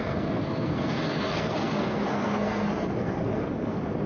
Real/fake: fake